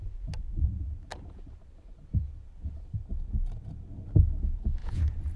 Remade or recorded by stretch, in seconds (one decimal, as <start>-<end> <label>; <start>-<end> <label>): 0.0-4.8 recorded; 4.8-5.4 remade